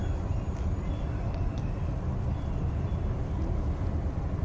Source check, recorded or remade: recorded